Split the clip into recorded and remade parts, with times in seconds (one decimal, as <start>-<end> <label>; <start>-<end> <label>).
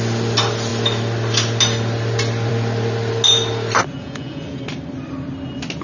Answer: 0.0-3.9 recorded; 3.9-4.6 remade; 4.6-5.8 recorded